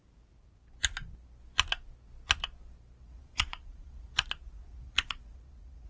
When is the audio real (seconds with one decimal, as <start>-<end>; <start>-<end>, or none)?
0.0-3.0